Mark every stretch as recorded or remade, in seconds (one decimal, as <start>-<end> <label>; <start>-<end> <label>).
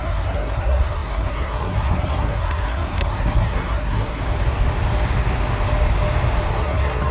0.0-4.2 remade; 4.2-6.5 recorded; 6.5-7.1 remade